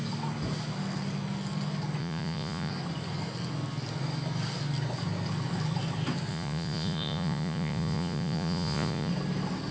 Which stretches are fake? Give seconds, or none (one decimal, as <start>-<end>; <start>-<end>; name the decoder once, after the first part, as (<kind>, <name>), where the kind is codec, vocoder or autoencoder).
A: 2.0-2.7 (vocoder, Vocos); 6.3-9.1